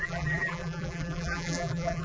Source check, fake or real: fake